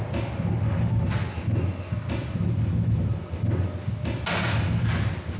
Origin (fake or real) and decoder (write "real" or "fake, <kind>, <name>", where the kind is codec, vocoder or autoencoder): real